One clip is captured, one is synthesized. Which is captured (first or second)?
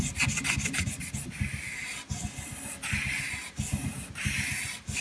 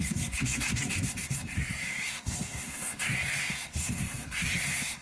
first